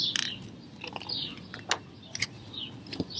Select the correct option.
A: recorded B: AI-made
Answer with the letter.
A